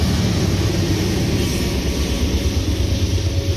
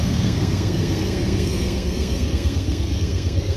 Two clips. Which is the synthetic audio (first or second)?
second